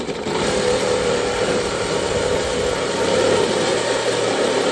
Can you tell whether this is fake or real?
fake